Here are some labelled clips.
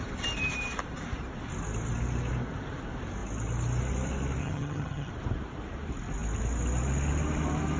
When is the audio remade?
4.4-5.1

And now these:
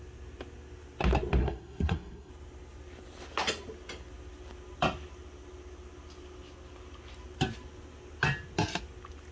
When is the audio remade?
1.4-2.3

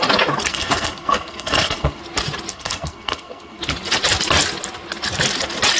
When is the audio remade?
0.5-2.0; 2.5-3.6

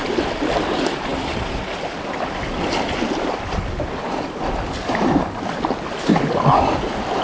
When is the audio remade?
none